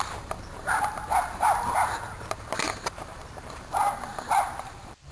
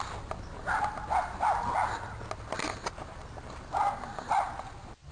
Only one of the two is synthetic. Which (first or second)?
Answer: first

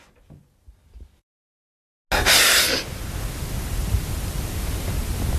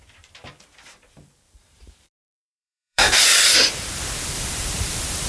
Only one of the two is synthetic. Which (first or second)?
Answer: second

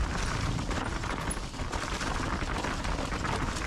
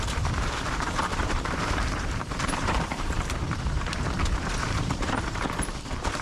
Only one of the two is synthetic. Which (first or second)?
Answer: second